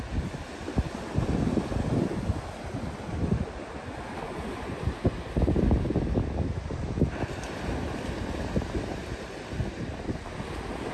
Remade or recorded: recorded